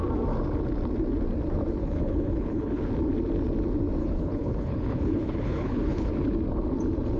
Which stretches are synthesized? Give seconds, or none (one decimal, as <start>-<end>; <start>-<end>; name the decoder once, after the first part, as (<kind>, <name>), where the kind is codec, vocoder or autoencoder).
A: 1.8-2.8 (codec, HILCodec); 4.0-6.1

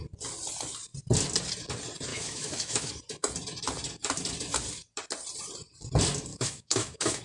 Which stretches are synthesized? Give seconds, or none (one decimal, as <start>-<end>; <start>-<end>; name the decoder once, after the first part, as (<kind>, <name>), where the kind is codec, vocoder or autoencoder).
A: 2.1-2.9 (autoencoder, DAC-VAE); 6.3-7.2

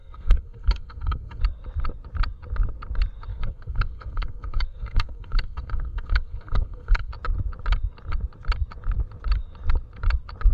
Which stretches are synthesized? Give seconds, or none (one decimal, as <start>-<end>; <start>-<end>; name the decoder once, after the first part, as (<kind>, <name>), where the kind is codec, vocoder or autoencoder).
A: 0.0-1.4 (codec, SNAC); 3.3-7.1

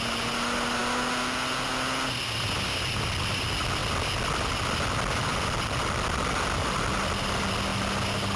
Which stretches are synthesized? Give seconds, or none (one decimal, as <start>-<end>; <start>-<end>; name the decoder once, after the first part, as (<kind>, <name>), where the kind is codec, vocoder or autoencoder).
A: none

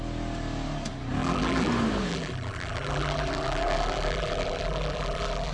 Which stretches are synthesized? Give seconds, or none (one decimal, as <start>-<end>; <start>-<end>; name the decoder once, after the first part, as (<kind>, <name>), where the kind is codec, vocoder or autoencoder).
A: 1.2-1.7 (vocoder, BigVGAN v2); 2.1-5.5

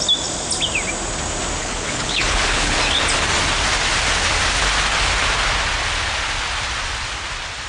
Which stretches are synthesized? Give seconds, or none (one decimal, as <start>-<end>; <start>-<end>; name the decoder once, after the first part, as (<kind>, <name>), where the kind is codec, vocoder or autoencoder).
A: 1.6-2.8 (codec, HILCodec)

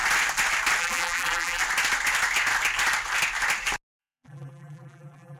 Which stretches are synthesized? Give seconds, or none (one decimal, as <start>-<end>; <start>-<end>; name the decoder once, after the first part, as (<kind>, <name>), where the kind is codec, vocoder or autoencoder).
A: 0.8-1.6 (vocoder, BigVGAN v2); 4.0-5.4

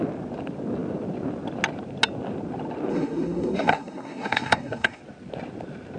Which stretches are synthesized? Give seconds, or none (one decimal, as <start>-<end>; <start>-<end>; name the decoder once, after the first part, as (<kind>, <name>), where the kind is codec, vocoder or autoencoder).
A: 2.9-5.0 (codec, SNAC)